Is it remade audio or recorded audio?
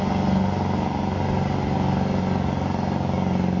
recorded